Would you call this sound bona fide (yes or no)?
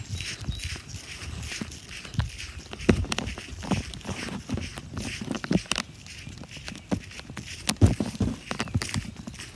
yes